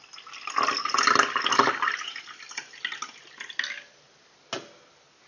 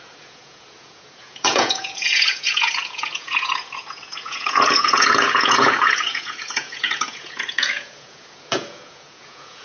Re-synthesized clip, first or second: second